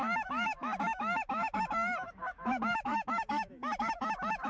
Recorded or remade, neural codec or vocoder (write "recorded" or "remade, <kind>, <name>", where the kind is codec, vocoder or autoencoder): remade, autoencoder, DAC-VAE